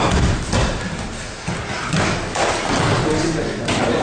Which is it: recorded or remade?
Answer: recorded